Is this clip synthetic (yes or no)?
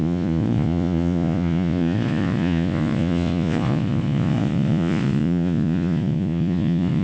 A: yes